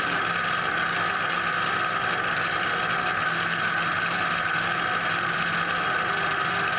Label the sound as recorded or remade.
recorded